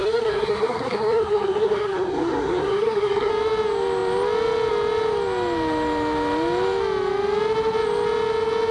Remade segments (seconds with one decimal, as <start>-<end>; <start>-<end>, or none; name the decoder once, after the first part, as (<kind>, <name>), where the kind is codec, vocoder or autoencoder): 0.0-3.3 (codec, SNAC)

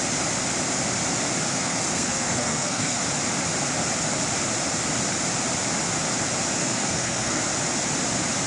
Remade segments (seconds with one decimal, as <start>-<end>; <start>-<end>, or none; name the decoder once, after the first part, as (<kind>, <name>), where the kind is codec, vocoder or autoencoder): 1.5-3.0 (codec, SNAC); 6.6-7.4

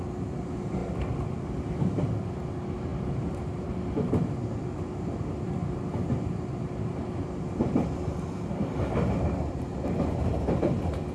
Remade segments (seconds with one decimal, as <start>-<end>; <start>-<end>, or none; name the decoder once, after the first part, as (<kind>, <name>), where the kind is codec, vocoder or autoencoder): none

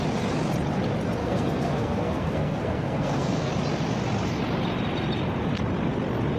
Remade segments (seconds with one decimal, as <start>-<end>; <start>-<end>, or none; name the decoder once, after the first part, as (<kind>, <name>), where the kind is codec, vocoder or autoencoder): 1.2-3.5 (codec, SNAC)

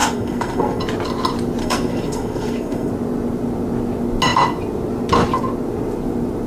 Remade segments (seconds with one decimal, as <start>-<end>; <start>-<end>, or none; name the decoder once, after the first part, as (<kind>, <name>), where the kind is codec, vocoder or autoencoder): 0.0-0.8 (codec, SNAC); 1.6-2.9